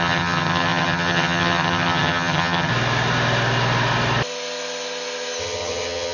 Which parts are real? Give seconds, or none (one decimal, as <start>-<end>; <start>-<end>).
2.7-5.4